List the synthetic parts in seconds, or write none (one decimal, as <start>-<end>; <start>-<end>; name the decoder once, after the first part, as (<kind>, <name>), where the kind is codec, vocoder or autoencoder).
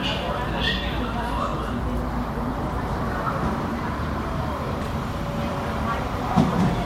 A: 2.5-6.9 (vocoder, BigVGAN v2)